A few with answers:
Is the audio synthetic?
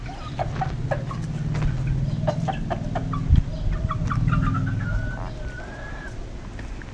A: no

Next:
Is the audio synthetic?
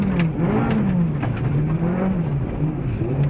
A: no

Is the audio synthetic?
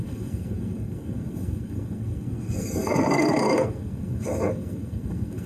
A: yes